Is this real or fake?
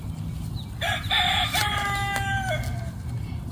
real